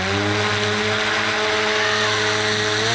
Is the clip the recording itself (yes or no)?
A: yes